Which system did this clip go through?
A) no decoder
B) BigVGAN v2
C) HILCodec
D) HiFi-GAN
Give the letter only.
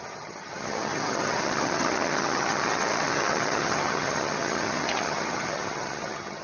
D